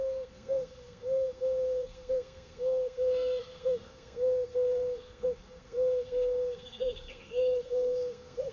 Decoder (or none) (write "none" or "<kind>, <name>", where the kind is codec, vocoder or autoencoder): codec, SNAC